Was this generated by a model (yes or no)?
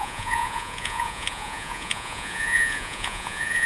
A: yes